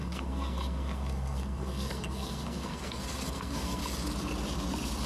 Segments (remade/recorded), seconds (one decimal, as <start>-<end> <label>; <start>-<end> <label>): 0.0-3.8 remade; 3.8-5.1 recorded